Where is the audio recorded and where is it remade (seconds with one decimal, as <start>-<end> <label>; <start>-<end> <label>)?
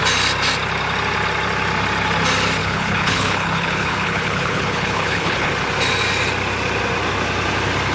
0.0-2.6 recorded; 2.6-5.5 remade; 5.5-7.9 recorded